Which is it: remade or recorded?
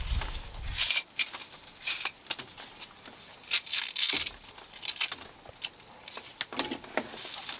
recorded